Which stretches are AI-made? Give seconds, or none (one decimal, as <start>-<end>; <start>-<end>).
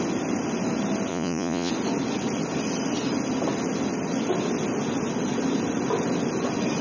1.1-1.7